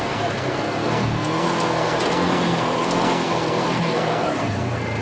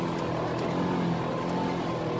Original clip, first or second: second